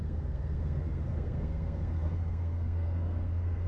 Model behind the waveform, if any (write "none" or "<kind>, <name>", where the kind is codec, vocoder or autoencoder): codec, SNAC